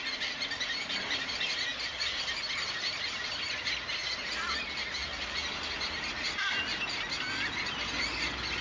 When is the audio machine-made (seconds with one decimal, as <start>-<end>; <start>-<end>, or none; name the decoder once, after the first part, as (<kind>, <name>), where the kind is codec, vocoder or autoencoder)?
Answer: none